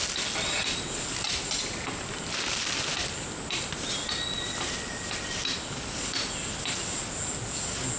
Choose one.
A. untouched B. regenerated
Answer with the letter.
A